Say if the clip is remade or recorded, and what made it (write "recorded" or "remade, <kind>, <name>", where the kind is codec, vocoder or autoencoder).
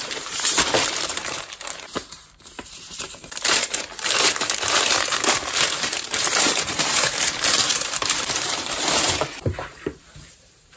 remade, vocoder, BigVGAN v2